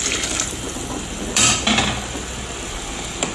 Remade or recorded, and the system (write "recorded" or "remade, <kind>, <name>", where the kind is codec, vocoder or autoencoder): remade, vocoder, BigVGAN v2